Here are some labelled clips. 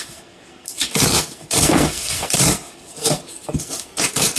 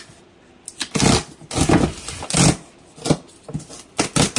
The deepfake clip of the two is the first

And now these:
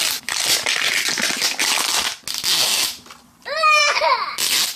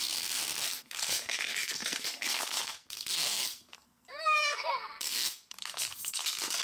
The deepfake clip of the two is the second